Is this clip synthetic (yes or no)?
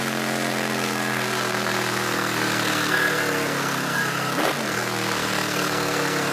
yes